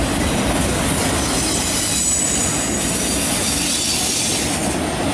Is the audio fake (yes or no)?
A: no